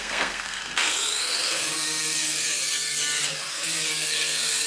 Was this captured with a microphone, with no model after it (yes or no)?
no